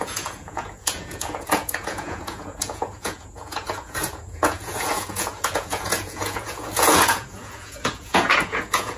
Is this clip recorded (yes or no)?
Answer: no